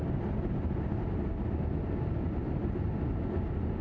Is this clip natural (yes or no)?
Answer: yes